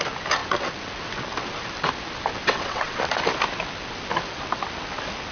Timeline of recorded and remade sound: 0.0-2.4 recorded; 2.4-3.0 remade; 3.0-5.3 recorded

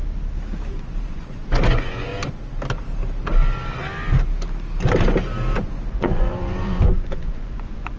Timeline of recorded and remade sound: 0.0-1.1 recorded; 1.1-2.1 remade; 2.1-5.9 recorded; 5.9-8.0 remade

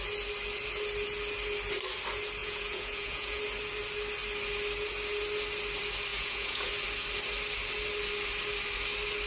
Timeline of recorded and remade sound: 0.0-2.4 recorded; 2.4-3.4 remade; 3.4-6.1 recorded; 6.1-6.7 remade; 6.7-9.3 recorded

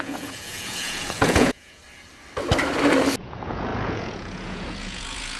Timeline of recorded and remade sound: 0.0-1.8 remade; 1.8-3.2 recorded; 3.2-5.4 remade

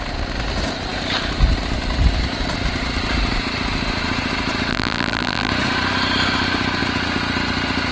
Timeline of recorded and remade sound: 0.0-4.7 recorded; 4.7-5.5 remade; 5.5-7.9 recorded

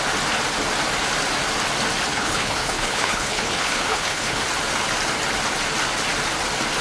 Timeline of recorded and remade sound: 0.0-2.1 recorded; 2.1-4.4 remade; 4.4-6.8 recorded

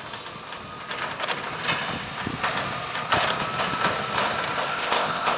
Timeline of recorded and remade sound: 0.0-4.7 recorded; 4.7-5.4 remade

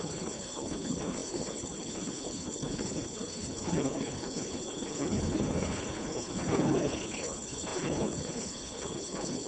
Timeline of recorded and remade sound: 0.0-9.5 remade